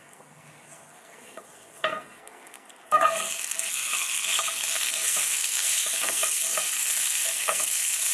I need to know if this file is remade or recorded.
remade